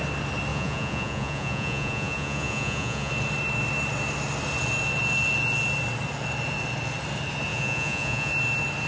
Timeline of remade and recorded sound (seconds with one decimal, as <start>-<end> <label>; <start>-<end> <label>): 0.0-0.5 recorded; 0.5-3.1 remade; 3.1-7.5 recorded; 7.5-8.3 remade; 8.3-8.9 recorded